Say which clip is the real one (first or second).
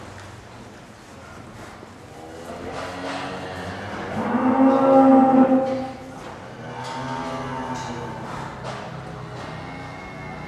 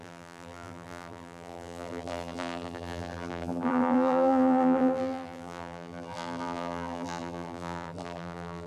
first